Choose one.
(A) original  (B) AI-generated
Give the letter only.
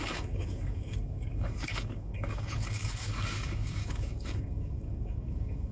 B